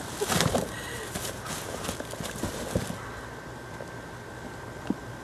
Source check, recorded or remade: recorded